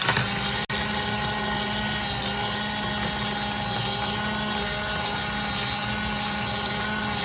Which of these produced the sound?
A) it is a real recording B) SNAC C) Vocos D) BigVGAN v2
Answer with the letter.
A